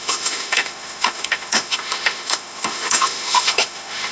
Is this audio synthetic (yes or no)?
yes